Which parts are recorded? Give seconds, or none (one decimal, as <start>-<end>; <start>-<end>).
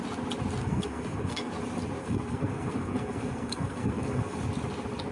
0.0-0.6; 1.5-2.0; 4.4-5.1